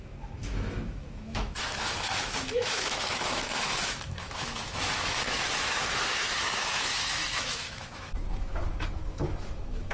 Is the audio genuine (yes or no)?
no